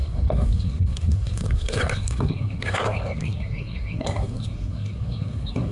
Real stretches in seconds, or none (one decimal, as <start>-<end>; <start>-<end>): none